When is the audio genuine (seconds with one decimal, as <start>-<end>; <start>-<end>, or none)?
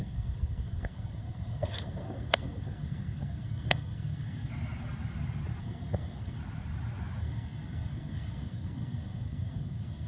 4.5-5.6; 6.4-7.2